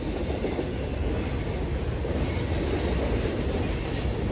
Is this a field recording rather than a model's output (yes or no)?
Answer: yes